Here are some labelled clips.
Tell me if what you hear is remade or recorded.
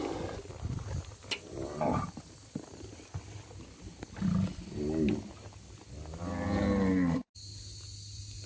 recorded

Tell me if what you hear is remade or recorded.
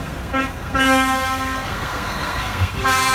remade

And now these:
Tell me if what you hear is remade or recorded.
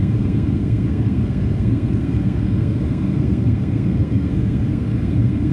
remade